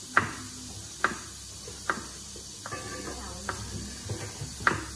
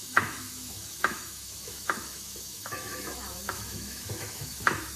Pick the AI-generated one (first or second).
second